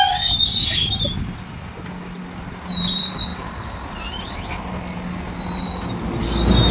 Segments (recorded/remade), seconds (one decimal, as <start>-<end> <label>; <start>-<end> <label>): 0.0-6.7 recorded